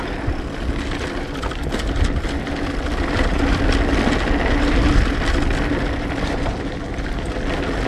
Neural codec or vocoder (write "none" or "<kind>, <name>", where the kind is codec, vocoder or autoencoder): none